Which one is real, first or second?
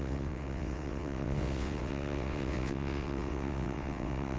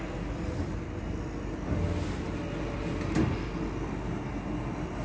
second